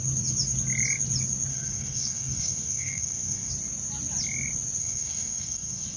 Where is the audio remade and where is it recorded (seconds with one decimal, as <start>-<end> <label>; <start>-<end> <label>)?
0.0-1.5 recorded; 1.5-3.5 remade; 3.5-4.8 recorded; 4.8-6.0 remade